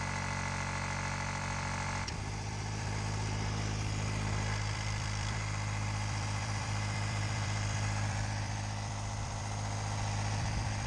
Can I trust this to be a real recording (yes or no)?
no